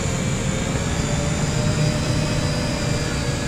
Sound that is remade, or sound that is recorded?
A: recorded